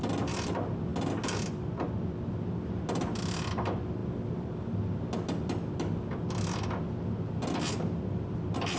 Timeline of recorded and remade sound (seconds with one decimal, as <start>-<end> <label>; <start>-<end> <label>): 0.0-8.8 recorded